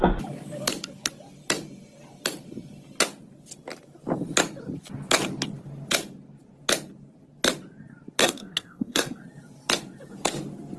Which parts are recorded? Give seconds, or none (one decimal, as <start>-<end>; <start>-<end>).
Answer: 0.0-8.2; 9.2-10.8